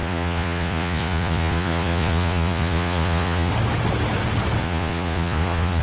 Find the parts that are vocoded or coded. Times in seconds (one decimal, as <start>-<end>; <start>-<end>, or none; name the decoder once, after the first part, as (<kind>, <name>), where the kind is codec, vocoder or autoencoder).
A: 0.0-3.5 (vocoder, Vocos); 4.6-5.8